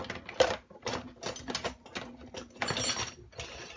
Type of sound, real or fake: real